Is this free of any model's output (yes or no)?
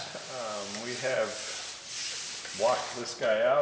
yes